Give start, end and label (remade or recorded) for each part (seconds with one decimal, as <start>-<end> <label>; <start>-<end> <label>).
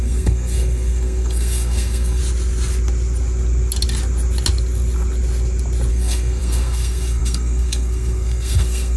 0.0-2.2 remade; 2.2-5.9 recorded; 5.9-9.0 remade